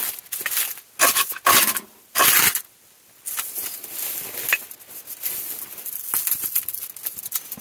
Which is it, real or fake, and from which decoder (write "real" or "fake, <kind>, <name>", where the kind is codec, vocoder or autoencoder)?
real